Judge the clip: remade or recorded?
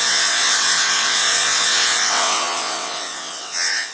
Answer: remade